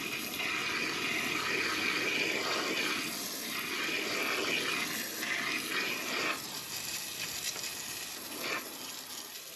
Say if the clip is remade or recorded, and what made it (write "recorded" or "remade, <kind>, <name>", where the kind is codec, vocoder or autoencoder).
recorded